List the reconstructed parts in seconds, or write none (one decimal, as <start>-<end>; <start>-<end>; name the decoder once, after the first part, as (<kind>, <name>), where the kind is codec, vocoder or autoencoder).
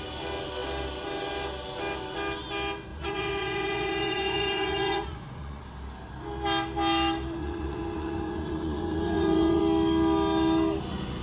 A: 2.9-5.6 (vocoder, Vocos); 7.4-9.6